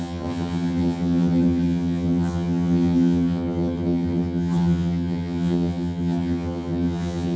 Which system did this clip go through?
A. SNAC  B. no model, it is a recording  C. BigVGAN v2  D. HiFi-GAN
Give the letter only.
D